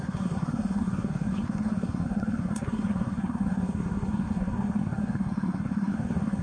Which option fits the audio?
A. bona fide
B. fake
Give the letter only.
B